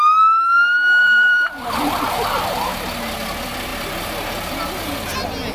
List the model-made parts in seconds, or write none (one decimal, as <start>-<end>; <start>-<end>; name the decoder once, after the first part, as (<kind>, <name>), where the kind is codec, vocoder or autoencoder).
1.0-2.7 (vocoder, BigVGAN v2)